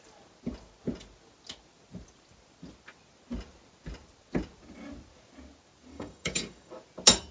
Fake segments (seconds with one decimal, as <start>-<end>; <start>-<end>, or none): 5.9-6.7